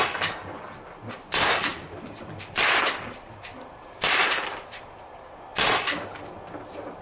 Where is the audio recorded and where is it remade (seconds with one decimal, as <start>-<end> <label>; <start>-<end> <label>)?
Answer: 0.0-1.7 recorded; 1.7-4.8 remade; 4.8-7.0 recorded